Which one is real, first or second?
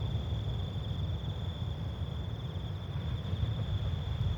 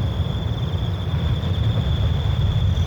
first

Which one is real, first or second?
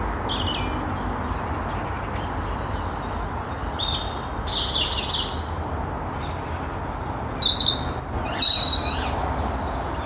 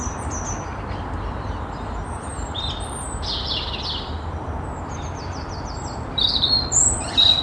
first